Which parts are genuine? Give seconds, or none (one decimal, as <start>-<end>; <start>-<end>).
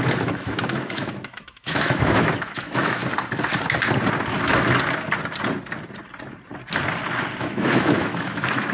3.0-7.4